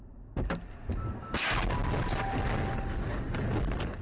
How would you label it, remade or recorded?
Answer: recorded